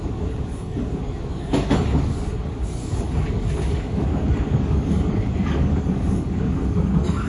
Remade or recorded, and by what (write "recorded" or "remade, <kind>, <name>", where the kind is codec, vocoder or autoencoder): remade, codec, DAC